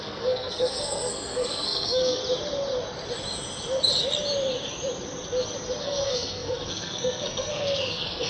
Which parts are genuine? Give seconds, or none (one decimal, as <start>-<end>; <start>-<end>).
2.2-5.8